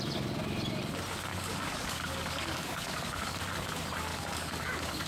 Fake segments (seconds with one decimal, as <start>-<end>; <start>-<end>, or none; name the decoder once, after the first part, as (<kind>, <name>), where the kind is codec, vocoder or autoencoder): 1.3-3.4 (codec, DAC); 4.1-5.1